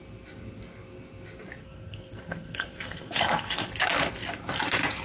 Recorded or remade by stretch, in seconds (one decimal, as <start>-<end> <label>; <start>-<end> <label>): 0.0-1.6 recorded; 1.6-3.7 remade; 3.7-5.0 recorded